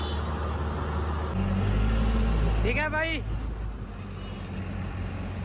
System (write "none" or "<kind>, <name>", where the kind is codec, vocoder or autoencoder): none